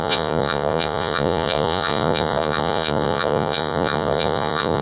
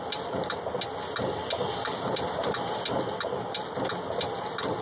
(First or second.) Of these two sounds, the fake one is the first